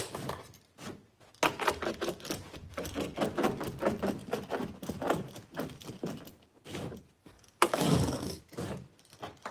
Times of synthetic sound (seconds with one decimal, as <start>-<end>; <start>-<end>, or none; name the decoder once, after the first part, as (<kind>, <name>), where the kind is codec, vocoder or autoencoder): 7.2-8.4 (codec, DAC)